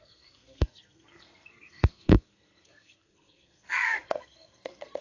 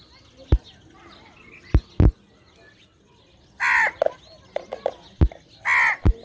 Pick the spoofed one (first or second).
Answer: first